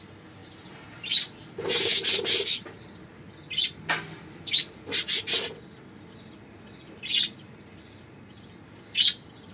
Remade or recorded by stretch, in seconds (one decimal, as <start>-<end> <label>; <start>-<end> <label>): 0.0-0.4 recorded; 0.4-3.2 remade; 3.2-3.6 recorded; 3.6-5.1 remade; 5.1-9.5 recorded